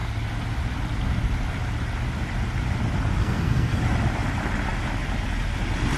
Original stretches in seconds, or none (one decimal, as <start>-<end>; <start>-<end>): 0.0-3.2; 3.8-6.0